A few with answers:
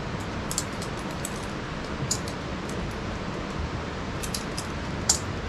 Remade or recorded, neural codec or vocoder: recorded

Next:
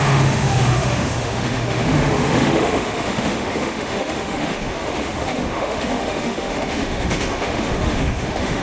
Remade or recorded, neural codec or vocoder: remade, autoencoder, DAC-VAE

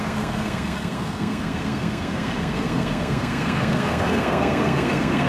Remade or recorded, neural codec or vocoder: remade, codec, SNAC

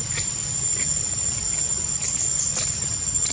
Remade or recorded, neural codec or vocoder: recorded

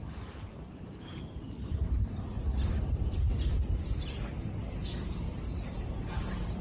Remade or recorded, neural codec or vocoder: remade, vocoder, BigVGAN v2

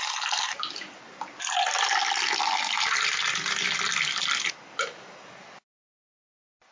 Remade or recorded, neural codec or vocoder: recorded